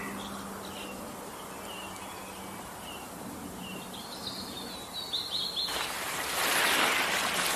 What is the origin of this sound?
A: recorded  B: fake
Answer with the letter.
A